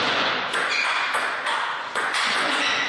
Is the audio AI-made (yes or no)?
yes